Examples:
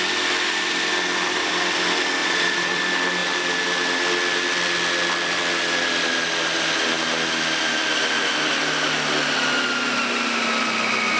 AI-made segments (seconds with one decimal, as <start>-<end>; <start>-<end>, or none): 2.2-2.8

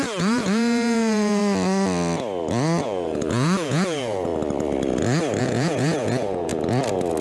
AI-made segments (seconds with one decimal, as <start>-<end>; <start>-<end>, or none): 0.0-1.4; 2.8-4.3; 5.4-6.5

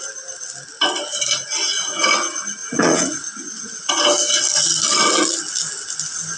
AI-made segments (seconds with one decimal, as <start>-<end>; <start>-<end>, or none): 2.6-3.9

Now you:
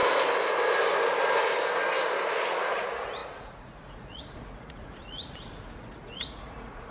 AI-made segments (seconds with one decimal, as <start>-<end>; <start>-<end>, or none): 2.4-6.9

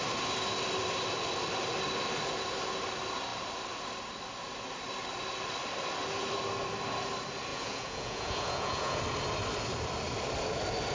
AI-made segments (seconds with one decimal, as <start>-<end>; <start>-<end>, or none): 7.5-9.0

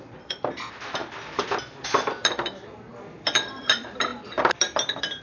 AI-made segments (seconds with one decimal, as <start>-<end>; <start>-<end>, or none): none

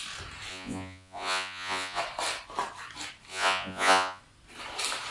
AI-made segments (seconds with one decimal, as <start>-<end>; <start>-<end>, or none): 0.5-2.0; 3.3-4.2

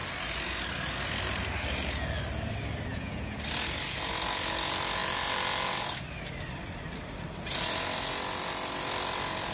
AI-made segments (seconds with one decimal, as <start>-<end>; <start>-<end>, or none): 2.9-3.4